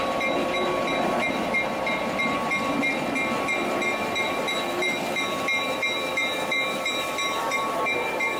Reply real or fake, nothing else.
fake